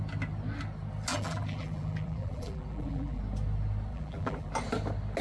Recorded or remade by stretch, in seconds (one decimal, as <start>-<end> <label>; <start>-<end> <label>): 0.0-1.1 recorded; 1.1-3.2 remade; 3.2-3.9 recorded; 3.9-4.5 remade; 4.5-5.2 recorded